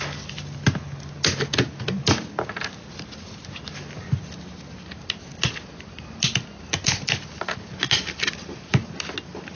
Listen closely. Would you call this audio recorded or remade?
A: recorded